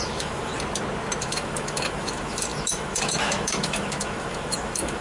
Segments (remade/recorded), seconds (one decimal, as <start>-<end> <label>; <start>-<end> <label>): 0.0-0.5 remade; 0.5-1.2 recorded; 1.2-5.0 remade

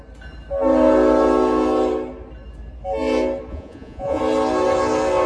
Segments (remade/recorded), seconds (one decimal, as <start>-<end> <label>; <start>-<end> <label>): 0.0-3.5 recorded; 3.5-4.2 remade; 4.2-5.3 recorded

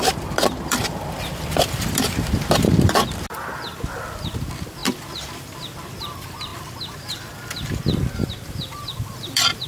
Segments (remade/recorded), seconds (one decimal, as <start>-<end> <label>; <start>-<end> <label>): 0.0-9.7 remade

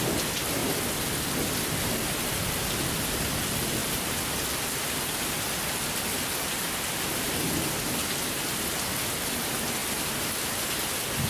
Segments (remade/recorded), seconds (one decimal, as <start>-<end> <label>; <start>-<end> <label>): 0.0-3.8 recorded; 3.8-5.6 remade; 5.6-9.8 recorded; 9.8-10.7 remade; 10.7-11.3 recorded